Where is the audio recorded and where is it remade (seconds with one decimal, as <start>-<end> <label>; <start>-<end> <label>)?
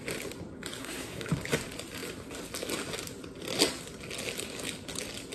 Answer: 0.0-0.8 recorded; 0.8-1.3 remade; 1.3-5.3 recorded